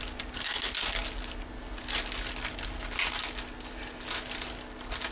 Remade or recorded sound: recorded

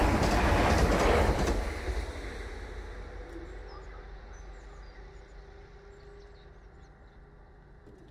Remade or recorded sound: recorded